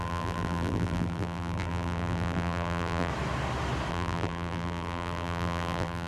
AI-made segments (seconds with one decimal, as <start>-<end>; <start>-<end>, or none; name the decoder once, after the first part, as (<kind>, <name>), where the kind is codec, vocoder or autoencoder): 0.0-3.1 (vocoder, BigVGAN v2); 3.9-6.1